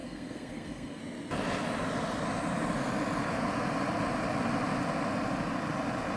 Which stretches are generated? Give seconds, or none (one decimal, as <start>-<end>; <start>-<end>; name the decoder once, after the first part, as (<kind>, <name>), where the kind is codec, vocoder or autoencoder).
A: 0.0-1.0 (codec, SNAC)